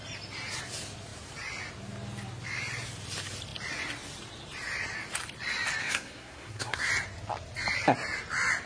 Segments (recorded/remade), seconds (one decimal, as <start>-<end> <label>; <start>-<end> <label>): 0.0-5.8 recorded; 5.8-6.9 remade; 6.9-8.7 recorded